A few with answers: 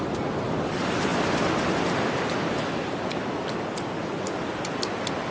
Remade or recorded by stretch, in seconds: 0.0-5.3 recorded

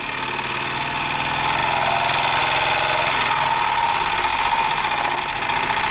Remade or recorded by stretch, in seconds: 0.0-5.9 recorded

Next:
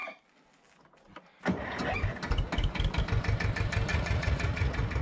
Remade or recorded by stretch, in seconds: 0.0-3.9 recorded; 3.9-5.0 remade